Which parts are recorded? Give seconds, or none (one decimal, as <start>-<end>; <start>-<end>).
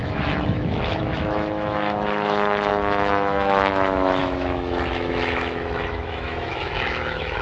none